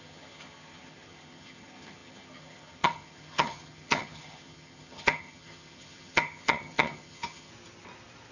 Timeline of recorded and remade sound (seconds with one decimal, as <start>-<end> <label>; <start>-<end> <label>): 0.0-7.5 remade; 7.5-8.3 recorded